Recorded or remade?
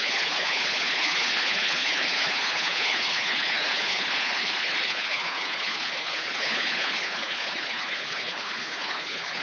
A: remade